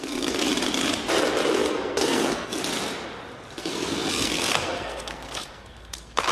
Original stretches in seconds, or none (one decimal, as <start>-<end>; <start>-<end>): 0.5-1.5; 2.6-3.6